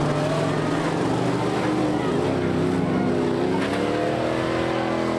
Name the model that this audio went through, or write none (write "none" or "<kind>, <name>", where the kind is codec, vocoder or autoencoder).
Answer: none